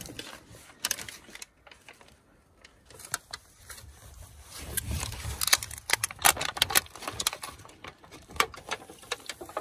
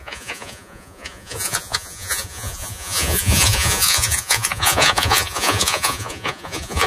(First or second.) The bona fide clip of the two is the first